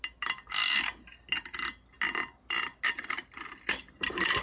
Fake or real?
real